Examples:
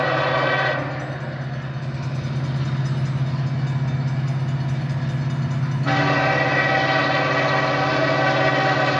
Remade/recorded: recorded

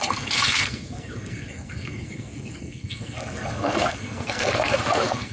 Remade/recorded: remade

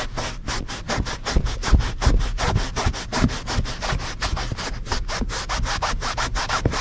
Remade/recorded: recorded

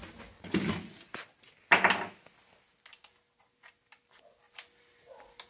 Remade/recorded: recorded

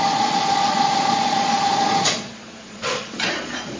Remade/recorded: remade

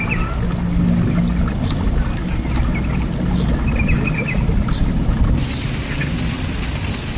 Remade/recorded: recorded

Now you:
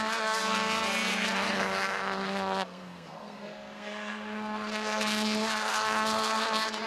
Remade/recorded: remade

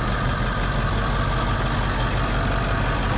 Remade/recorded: recorded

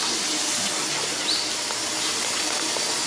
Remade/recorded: recorded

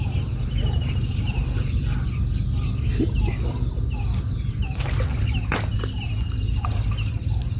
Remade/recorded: recorded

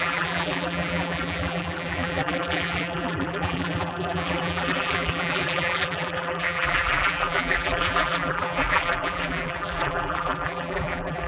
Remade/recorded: remade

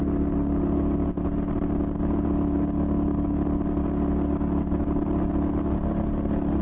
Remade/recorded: recorded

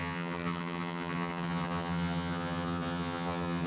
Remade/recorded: remade